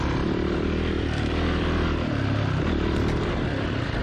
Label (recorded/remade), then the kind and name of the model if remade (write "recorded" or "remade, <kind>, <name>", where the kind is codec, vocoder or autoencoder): remade, vocoder, BigVGAN v2